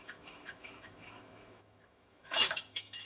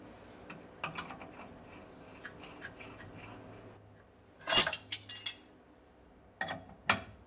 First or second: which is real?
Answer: second